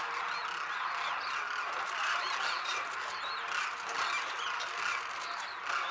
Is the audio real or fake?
real